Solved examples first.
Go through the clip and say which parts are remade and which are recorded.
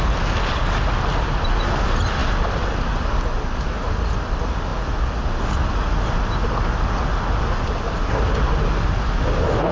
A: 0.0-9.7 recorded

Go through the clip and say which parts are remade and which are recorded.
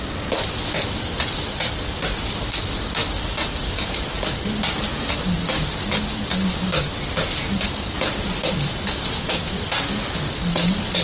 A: 0.0-11.0 recorded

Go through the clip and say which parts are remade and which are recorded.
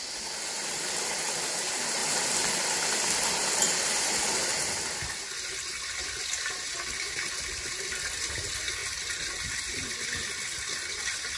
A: 0.0-11.4 recorded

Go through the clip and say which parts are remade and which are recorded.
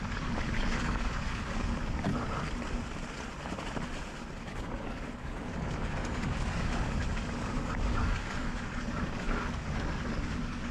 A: 0.0-2.1 remade; 2.1-4.4 recorded; 4.4-10.7 remade